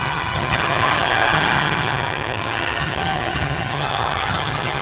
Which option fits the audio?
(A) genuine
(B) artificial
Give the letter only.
B